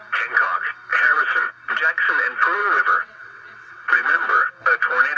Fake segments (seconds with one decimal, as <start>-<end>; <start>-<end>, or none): 0.9-1.5; 2.6-4.5

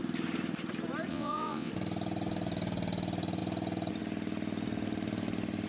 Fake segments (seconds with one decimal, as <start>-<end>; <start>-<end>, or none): 1.1-1.7

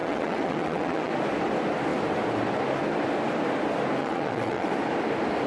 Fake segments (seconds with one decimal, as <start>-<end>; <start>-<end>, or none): 0.0-1.1; 4.0-4.7

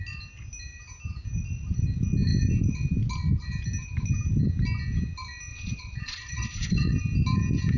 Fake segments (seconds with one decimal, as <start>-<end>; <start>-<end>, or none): 5.5-7.0

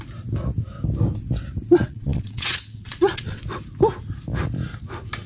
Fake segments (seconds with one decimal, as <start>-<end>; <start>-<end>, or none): 1.8-3.4

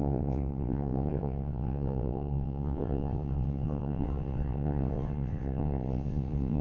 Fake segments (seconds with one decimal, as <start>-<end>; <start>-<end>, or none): 0.0-6.6

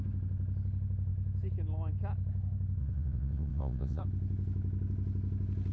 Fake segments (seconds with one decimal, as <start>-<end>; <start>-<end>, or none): 2.8-4.0

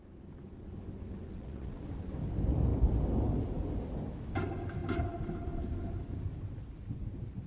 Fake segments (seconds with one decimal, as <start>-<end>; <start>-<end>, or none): 1.3-1.8